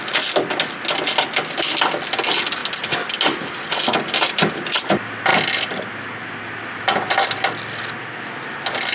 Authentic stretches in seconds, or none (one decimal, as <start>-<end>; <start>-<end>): 0.0-8.9